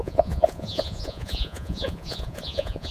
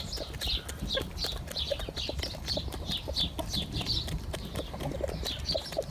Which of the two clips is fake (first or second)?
first